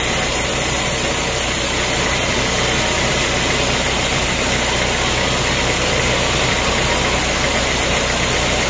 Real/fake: real